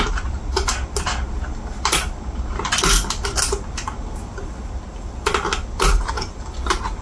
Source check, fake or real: real